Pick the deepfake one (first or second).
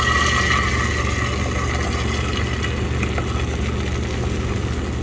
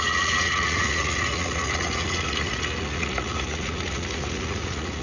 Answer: second